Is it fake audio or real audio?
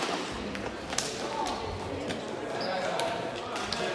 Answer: real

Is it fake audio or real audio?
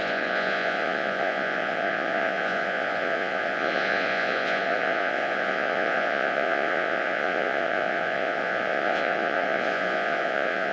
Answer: fake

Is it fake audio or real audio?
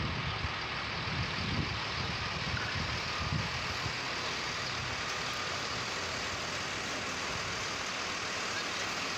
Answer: real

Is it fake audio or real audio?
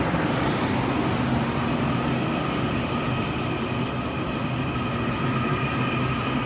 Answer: real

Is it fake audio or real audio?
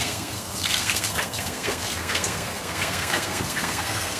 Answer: fake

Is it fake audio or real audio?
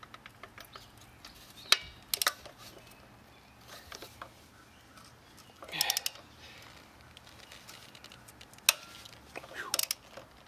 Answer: real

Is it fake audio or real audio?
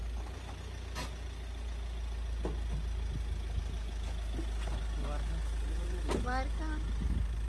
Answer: real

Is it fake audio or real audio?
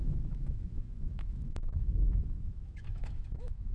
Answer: fake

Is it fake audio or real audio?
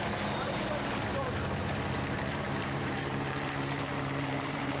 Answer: fake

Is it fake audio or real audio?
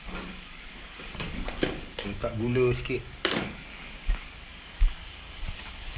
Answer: fake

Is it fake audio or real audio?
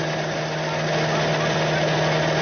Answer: real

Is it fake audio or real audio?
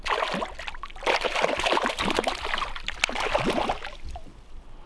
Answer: real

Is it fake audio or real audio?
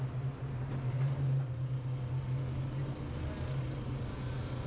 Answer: real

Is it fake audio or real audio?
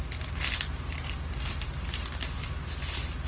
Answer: real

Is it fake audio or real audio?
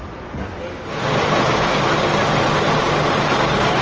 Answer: real